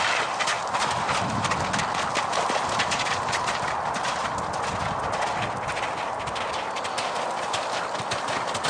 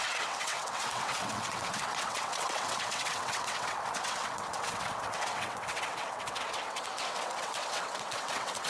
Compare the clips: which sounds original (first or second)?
first